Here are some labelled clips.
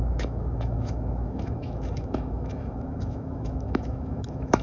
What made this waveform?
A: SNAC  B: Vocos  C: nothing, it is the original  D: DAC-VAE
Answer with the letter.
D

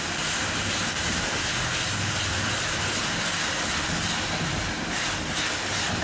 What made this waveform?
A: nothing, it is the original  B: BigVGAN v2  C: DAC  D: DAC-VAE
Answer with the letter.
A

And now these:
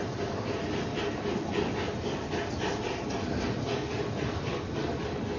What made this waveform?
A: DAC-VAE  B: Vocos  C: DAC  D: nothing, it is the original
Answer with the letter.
D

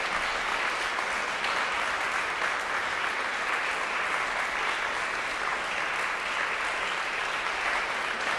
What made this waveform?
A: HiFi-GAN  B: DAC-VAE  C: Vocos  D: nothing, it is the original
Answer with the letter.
D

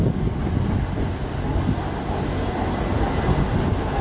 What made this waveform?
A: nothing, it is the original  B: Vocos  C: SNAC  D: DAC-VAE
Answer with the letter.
A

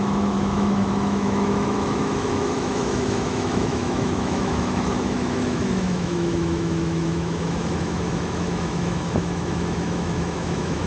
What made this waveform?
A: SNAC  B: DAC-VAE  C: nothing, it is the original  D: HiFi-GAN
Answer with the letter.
B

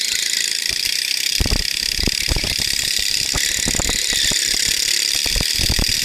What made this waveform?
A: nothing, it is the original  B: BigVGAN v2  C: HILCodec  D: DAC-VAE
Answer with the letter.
A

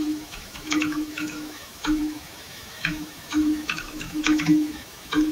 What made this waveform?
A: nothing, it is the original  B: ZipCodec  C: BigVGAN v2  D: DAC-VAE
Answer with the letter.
D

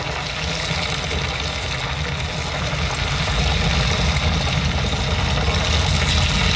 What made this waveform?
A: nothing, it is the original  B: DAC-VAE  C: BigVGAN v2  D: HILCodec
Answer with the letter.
A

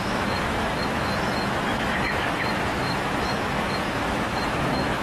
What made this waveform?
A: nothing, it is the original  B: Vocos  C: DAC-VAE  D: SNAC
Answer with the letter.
C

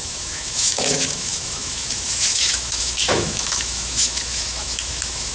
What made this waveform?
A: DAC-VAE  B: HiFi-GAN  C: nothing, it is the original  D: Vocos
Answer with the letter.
A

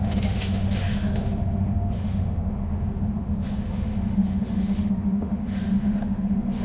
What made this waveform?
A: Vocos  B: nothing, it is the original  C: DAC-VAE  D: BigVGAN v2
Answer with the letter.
C